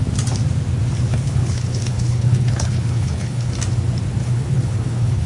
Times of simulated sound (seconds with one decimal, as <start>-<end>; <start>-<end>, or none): 1.1-3.5; 4.2-5.3